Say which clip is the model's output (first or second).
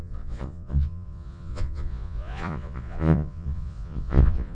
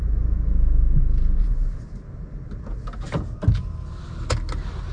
first